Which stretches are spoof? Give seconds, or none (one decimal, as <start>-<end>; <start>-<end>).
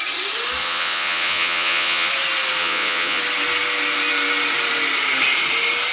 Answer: 0.6-2.1; 2.6-3.2